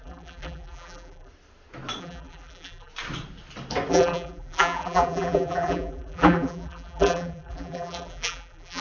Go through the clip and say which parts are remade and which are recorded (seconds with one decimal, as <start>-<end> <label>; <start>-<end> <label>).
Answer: 0.0-1.3 remade; 1.3-2.0 recorded; 2.0-2.9 remade; 2.9-3.9 recorded; 3.9-8.8 remade

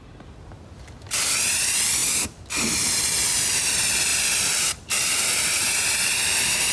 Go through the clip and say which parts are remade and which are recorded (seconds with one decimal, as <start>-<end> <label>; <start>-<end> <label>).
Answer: 0.0-4.1 recorded; 4.1-5.8 remade; 5.8-6.7 recorded